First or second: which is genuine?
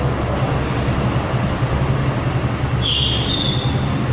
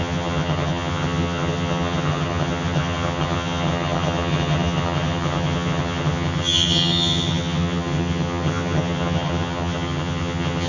first